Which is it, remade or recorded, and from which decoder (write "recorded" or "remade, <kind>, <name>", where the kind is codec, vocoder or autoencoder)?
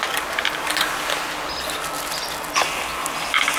recorded